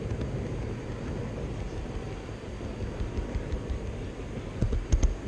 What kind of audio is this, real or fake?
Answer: real